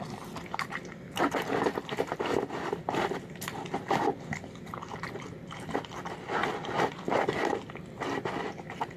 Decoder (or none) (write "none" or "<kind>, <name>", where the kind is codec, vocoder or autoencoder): none